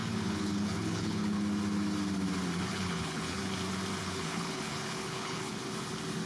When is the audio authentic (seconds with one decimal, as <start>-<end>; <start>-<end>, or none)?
1.4-2.7; 3.4-4.0; 5.6-6.3

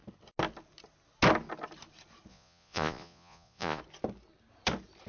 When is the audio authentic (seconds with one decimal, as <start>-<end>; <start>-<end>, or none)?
0.0-2.3; 3.8-5.1

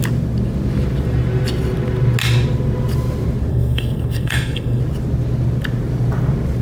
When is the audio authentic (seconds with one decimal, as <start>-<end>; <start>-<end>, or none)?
0.0-3.5; 4.8-6.6

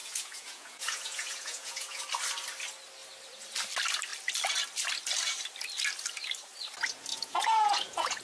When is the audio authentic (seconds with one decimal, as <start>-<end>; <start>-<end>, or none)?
2.0-7.1